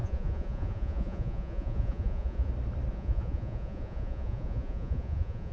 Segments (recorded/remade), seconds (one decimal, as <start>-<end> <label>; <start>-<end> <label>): 0.0-2.5 remade; 2.5-2.9 recorded; 2.9-5.5 remade